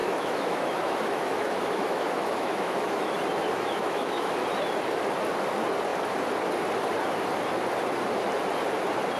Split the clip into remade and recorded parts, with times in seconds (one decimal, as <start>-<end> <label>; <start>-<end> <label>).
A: 0.0-3.1 remade; 3.1-3.5 recorded; 3.5-4.3 remade; 4.3-9.2 recorded

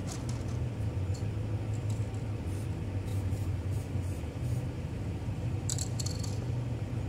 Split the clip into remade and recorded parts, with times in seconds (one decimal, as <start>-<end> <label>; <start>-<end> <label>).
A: 0.0-3.1 recorded; 3.1-6.0 remade; 6.0-7.1 recorded

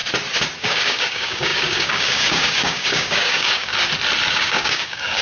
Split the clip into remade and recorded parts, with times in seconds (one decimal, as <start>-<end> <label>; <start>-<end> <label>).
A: 0.0-0.6 recorded; 0.6-3.7 remade; 3.7-4.3 recorded; 4.3-5.2 remade

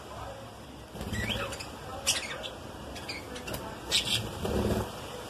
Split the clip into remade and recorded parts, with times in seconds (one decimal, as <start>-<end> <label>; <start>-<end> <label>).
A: 0.0-5.3 recorded